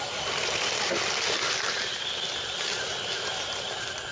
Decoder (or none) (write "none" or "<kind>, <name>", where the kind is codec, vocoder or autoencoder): none